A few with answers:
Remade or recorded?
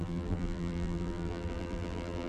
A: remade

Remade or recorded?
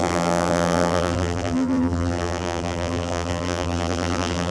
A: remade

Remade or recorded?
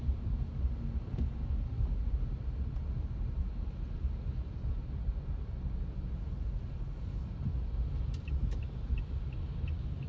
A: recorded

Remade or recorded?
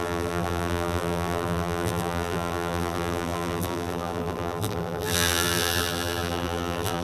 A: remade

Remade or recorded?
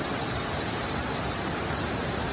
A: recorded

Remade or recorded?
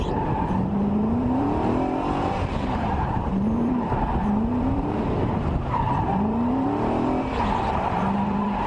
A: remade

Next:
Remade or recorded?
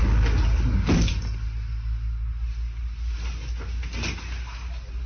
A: recorded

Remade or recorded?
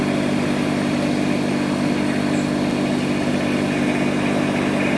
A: remade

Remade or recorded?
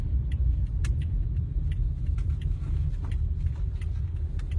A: recorded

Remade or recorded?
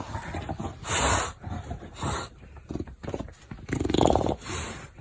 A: remade